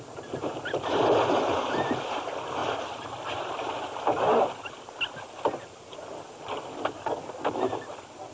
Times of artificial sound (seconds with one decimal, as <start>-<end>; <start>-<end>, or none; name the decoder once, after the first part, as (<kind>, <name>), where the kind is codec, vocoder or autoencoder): none